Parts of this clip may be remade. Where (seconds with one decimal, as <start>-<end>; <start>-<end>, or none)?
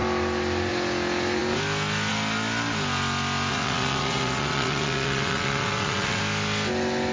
3.5-6.2